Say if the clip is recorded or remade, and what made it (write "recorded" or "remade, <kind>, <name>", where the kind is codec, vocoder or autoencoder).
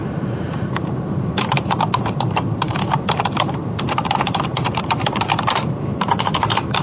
remade, vocoder, BigVGAN v2